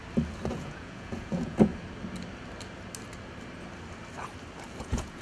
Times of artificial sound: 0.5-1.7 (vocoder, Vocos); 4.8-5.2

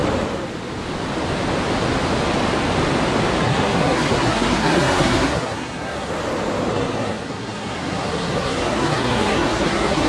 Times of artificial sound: 3.4-6.1 (codec, SNAC); 6.7-10.1

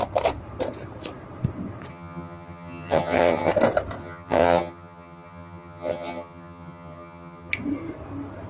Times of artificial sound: 1.9-3.5 (vocoder, HiFi-GAN); 4.0-7.5

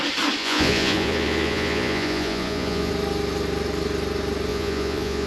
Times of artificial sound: 0.4-2.9 (vocoder, Vocos); 4.5-5.3